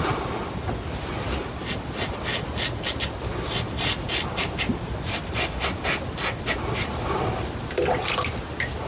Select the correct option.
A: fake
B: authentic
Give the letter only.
B